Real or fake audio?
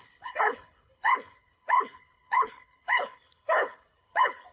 fake